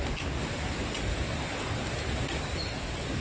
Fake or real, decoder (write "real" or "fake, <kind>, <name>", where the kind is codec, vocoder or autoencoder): real